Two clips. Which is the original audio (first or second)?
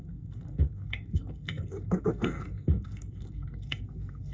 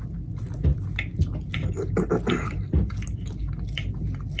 second